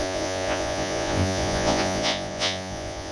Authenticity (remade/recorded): remade